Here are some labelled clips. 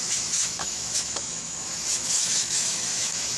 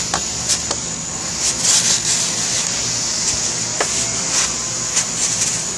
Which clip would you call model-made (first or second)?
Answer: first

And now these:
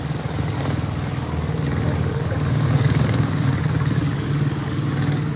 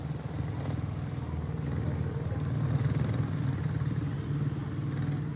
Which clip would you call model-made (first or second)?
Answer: first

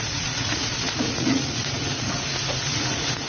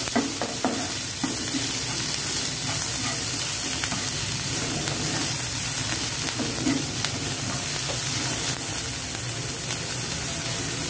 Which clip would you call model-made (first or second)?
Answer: first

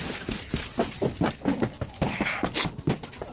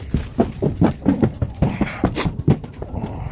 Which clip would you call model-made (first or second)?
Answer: second